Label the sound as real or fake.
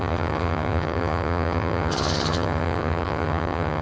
fake